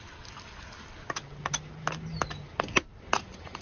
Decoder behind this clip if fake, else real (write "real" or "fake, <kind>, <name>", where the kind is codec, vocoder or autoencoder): real